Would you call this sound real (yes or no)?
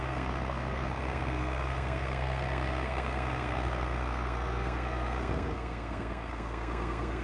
no